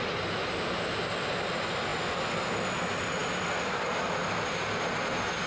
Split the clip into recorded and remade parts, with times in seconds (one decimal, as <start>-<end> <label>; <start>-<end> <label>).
0.0-5.5 recorded